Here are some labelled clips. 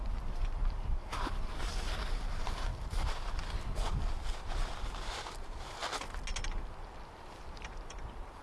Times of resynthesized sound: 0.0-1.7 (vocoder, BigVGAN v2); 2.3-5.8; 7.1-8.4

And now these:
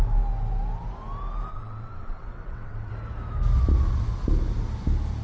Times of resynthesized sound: 1.5-2.9 (vocoder, WaveNeXt)

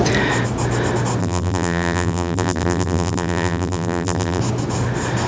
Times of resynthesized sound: 1.2-4.4 (vocoder, BigVGAN v2)

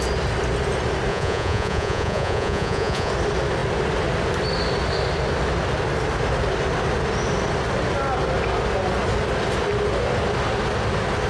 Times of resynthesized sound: 1.1-3.1 (vocoder, Vocos)

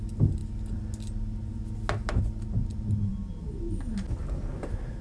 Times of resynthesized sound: none

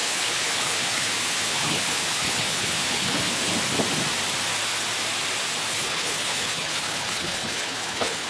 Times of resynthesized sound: 0.0-3.5 (codec, HILCodec); 5.7-8.3

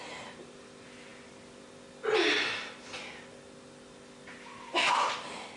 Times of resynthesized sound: 0.0-1.1 (vocoder, BigVGAN v2); 4.5-5.6

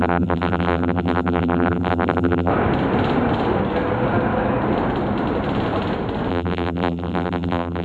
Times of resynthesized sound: 0.0-2.5 (vocoder, BigVGAN v2); 6.3-7.8